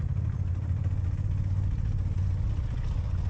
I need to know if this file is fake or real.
real